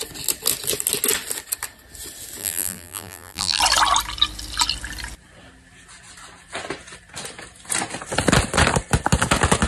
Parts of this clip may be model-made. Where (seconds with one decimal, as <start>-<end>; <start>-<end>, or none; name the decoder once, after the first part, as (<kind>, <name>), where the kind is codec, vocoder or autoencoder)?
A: 2.4-3.6 (vocoder, BigVGAN v2)